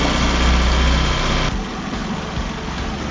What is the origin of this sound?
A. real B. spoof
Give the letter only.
A